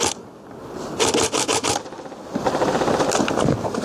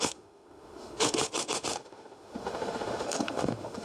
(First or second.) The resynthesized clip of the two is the second